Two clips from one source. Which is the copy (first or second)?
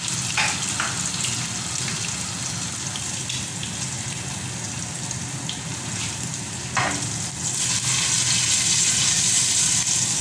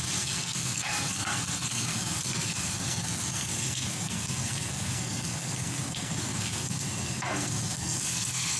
second